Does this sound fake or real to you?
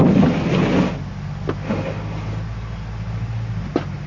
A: real